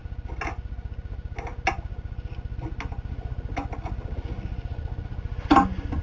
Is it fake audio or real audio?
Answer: real